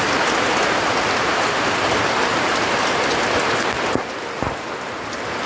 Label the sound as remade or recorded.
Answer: recorded